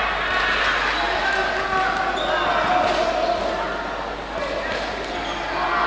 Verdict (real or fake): real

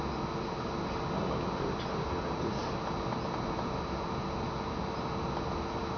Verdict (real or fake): real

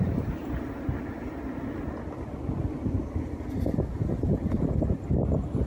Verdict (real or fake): real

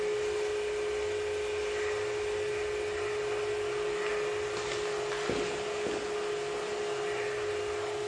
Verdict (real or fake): real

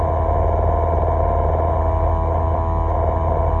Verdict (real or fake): real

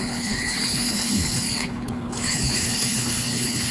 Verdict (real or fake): fake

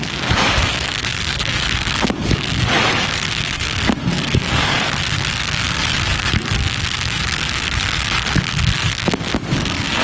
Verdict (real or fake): fake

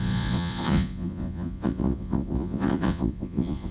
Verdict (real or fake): fake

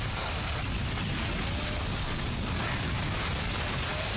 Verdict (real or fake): real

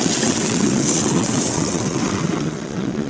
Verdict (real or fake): fake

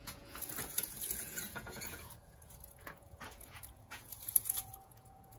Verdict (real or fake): fake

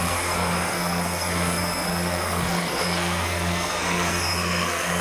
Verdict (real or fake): fake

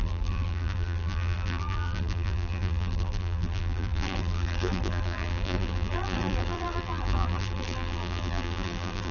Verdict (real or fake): fake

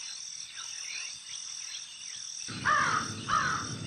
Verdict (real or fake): real